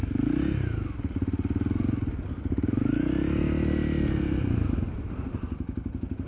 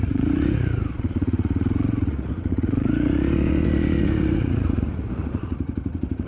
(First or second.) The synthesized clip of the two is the second